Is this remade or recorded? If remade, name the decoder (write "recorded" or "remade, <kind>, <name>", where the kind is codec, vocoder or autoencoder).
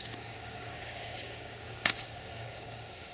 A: remade, codec, DAC